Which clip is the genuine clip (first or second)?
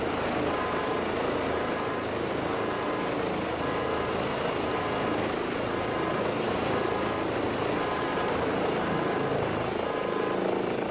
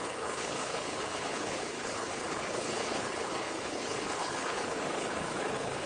first